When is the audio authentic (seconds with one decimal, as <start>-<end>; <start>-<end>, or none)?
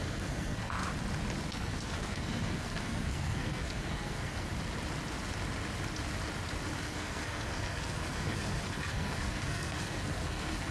0.8-1.5; 4.5-6.8